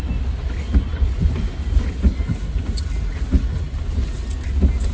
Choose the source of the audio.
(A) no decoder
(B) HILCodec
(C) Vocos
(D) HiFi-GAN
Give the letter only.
A